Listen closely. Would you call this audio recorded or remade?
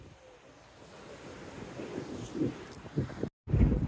recorded